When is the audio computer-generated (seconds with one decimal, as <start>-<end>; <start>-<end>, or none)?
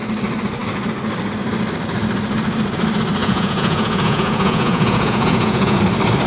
3.2-5.8